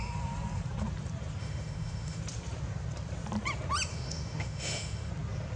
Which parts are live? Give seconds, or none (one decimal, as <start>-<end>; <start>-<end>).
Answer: 0.0-1.4; 2.2-3.9; 5.1-5.6